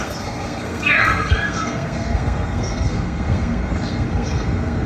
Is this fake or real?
fake